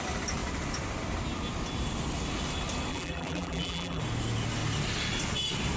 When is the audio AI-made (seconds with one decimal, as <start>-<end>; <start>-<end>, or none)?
2.9-4.0